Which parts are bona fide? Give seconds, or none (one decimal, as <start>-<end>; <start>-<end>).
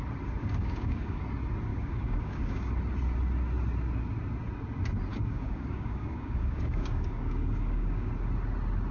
0.0-0.4; 1.2-1.7; 2.7-5.1; 8.1-8.9